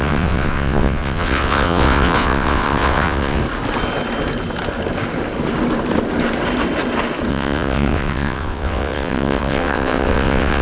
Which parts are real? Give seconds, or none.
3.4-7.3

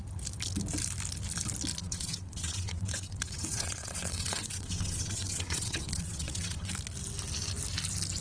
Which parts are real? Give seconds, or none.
0.0-1.8; 6.7-8.2

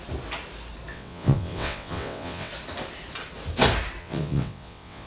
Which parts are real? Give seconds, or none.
0.0-0.9; 2.5-4.0